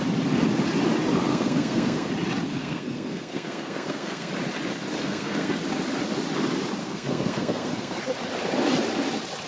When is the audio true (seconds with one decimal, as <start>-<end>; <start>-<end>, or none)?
0.0-1.3; 2.1-2.5; 4.3-5.0; 5.6-6.8; 8.0-9.5